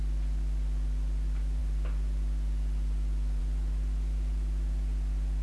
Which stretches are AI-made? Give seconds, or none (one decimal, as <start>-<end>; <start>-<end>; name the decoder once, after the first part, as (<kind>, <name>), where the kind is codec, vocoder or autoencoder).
none